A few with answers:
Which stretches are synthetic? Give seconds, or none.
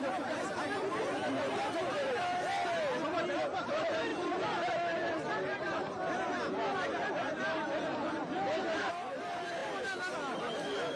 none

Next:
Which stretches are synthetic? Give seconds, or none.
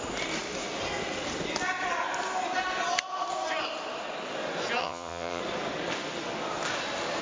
4.8-5.4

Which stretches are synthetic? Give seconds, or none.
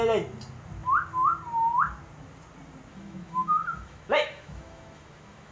2.9-5.5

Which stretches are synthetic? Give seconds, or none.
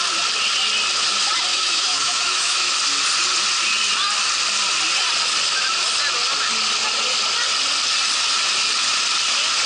1.5-2.7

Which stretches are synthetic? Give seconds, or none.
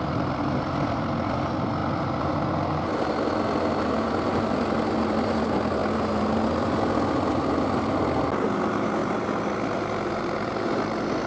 none